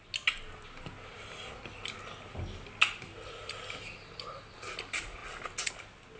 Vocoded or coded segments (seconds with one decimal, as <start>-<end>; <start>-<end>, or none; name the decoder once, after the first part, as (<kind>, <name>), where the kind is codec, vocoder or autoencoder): none